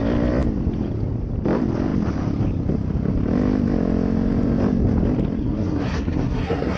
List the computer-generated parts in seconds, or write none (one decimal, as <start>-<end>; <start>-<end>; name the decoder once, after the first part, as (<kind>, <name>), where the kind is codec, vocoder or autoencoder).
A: 5.4-6.8 (codec, SNAC)